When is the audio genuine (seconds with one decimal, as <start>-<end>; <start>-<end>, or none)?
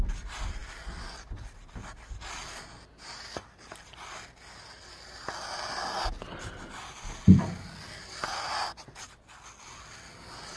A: 0.0-10.6